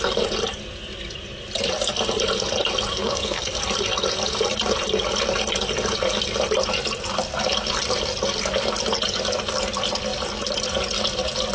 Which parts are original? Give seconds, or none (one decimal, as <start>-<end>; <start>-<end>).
0.0-2.9; 3.6-11.5